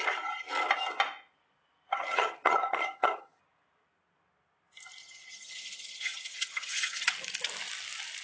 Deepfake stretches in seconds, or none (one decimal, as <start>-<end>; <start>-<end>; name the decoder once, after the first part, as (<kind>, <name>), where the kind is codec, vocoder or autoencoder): 1.9-3.4 (vocoder, HiFi-GAN); 5.0-7.1